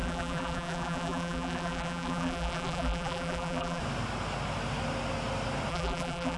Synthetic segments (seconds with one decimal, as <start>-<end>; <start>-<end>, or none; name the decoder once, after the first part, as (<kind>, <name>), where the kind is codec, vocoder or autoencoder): 0.0-3.8 (vocoder, BigVGAN v2); 5.7-6.4

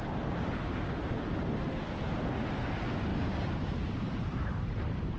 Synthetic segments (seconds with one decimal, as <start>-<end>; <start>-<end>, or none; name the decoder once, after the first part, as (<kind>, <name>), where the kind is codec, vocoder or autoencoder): 3.1-5.2 (vocoder, BigVGAN v2)

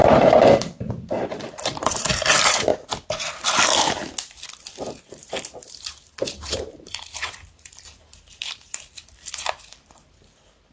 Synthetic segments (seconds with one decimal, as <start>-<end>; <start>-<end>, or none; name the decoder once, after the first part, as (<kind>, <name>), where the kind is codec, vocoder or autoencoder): 0.0-2.7 (vocoder, BigVGAN v2); 4.8-10.7